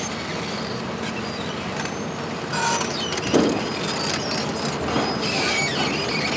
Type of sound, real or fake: real